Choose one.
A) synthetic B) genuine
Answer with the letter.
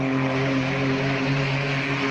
B